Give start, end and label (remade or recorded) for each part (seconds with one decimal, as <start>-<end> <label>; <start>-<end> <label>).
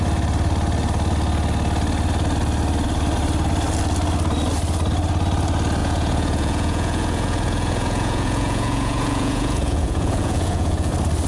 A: 0.0-5.8 recorded; 5.8-10.9 remade; 10.9-11.3 recorded